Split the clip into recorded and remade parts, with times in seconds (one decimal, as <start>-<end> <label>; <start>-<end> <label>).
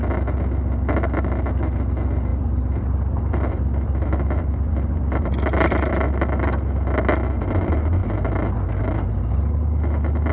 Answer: 0.0-2.3 recorded; 2.3-5.9 remade; 5.9-10.3 recorded